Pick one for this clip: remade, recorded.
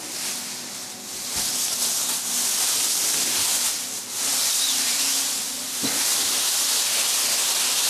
recorded